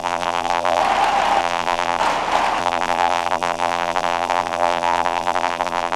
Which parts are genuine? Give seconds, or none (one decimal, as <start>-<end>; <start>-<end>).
0.8-1.4; 2.0-2.6